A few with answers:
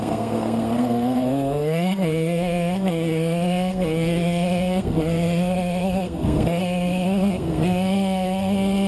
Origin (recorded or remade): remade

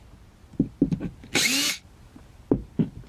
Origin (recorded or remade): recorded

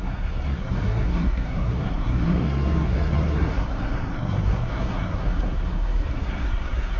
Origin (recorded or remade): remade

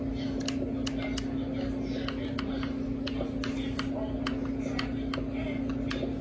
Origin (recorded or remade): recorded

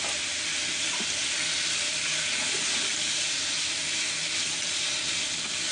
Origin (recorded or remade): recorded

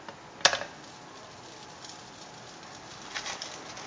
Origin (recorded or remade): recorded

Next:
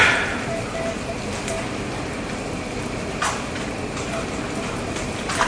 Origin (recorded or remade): remade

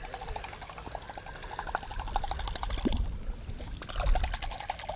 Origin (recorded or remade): recorded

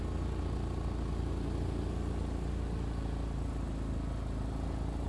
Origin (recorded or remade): recorded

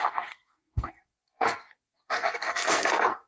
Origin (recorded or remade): remade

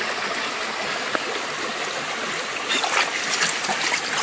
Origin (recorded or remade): recorded